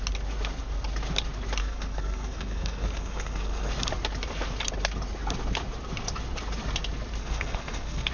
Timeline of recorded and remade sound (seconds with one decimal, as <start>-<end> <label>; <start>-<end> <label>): 0.0-1.6 recorded; 1.6-3.7 remade; 3.7-7.2 recorded; 7.2-8.1 remade